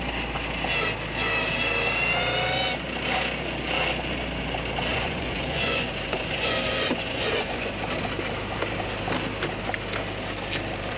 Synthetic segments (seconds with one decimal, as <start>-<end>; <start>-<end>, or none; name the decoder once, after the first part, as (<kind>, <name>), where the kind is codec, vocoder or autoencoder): 4.9-7.7 (vocoder, Vocos)